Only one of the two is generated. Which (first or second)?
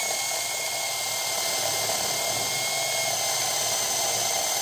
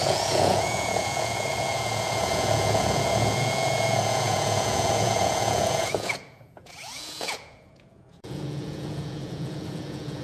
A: second